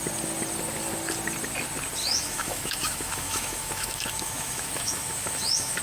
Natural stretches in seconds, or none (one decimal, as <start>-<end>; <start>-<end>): 0.0-2.0